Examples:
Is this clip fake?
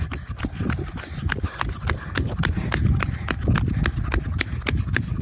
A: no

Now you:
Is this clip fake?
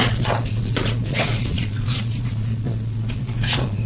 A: yes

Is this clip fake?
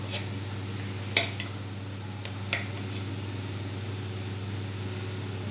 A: no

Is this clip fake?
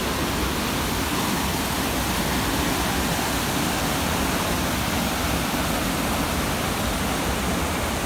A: no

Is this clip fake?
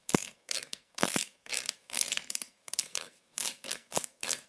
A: yes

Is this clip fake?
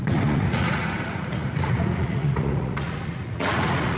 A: yes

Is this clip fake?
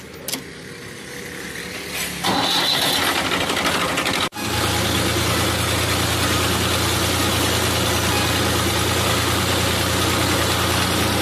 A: no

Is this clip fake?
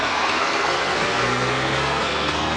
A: yes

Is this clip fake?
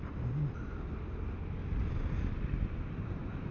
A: no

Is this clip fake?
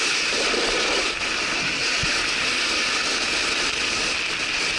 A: no